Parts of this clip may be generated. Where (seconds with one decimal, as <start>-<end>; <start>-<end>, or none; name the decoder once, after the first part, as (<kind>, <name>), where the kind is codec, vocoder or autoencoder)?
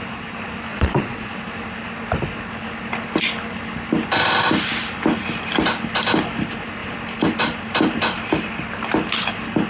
0.7-1.3 (vocoder, Vocos)